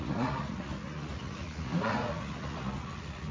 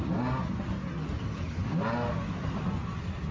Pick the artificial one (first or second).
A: first